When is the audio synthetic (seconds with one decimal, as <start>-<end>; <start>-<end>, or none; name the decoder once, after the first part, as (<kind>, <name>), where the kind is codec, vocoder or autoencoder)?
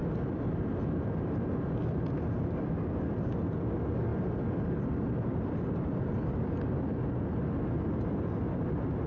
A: none